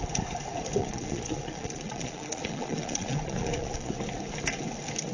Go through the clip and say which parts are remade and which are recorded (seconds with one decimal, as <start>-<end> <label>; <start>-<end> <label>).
0.0-0.8 recorded; 0.8-3.9 remade; 3.9-5.1 recorded